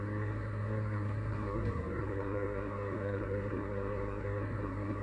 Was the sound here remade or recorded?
remade